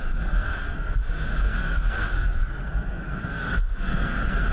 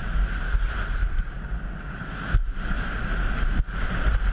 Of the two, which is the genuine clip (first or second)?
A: second